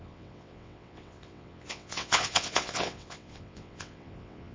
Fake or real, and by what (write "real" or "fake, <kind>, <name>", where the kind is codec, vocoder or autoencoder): fake, vocoder, WaveNeXt